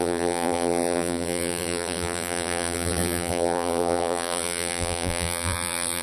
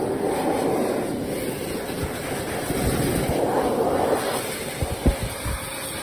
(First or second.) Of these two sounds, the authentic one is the second